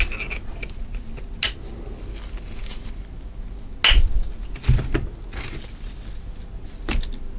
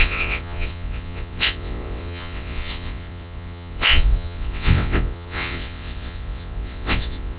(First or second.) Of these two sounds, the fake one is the second